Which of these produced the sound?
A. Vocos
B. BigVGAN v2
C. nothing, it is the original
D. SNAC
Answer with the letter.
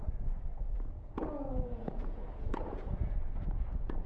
A